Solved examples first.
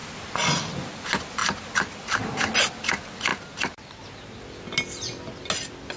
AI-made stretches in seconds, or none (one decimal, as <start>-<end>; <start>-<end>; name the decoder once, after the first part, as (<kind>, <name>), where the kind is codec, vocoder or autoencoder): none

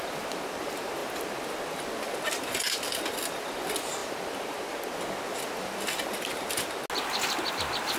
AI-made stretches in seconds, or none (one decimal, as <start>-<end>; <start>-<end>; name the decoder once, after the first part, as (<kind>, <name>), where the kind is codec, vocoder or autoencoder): none

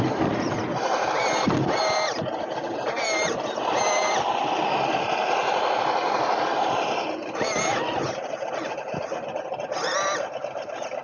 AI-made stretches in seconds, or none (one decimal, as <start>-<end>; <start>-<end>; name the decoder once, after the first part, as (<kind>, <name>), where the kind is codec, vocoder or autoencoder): none

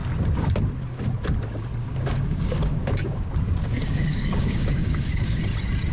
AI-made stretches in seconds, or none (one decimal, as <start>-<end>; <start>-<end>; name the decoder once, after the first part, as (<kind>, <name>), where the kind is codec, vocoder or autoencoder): 1.9-5.4 (codec, DAC)

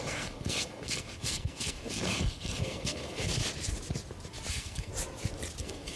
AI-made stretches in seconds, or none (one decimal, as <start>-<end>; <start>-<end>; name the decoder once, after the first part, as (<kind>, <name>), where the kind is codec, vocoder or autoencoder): 0.0-3.3 (codec, SNAC); 4.5-4.9; 5.6-6.0